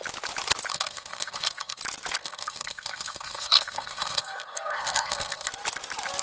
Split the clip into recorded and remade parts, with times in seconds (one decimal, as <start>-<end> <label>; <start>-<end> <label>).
0.0-0.7 recorded; 0.7-1.8 remade; 1.8-2.2 recorded; 2.2-5.5 remade; 5.5-6.2 recorded